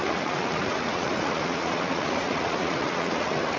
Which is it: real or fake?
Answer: fake